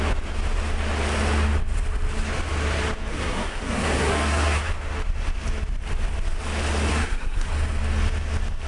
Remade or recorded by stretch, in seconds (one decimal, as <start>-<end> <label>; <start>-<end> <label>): 0.0-3.1 recorded; 3.1-4.7 remade; 4.7-6.9 recorded; 6.9-7.5 remade; 7.5-8.7 recorded